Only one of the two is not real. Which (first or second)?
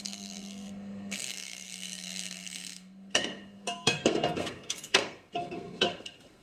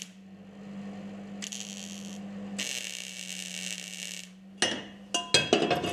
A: first